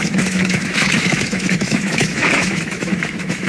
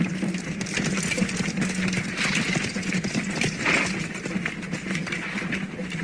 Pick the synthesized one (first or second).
first